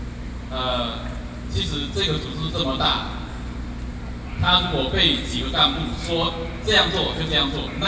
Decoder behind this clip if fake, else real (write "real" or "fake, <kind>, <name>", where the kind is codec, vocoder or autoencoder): real